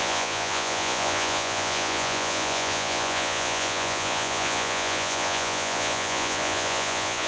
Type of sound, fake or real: fake